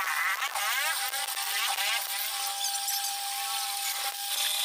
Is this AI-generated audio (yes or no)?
no